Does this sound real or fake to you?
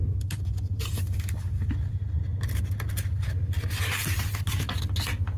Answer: real